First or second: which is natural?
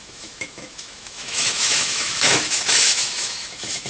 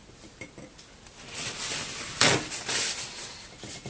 second